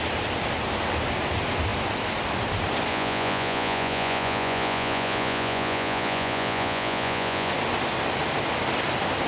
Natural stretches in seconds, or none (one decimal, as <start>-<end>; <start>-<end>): 0.0-2.9; 7.5-9.3